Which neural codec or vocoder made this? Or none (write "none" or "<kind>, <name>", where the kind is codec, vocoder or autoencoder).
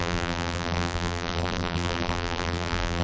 vocoder, BigVGAN v2